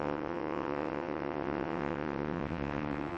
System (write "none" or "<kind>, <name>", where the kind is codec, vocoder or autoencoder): vocoder, WaveNeXt